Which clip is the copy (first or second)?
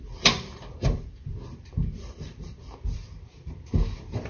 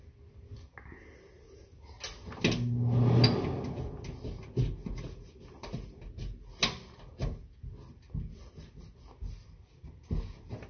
first